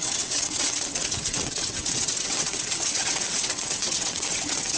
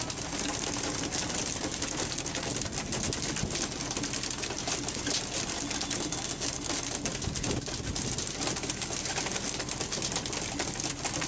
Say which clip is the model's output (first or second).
first